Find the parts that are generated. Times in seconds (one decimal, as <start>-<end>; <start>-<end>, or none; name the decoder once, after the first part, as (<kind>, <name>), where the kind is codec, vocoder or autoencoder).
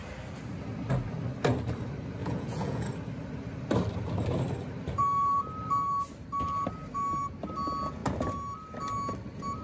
2.2-2.9 (vocoder, Vocos)